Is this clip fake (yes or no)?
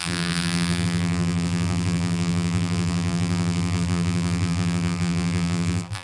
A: yes